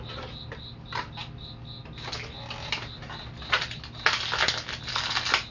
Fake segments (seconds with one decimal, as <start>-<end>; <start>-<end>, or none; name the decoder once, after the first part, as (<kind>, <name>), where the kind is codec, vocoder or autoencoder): none